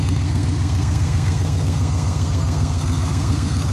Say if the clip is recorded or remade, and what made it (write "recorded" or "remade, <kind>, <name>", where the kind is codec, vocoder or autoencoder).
remade, codec, SNAC